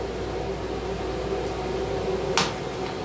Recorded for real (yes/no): yes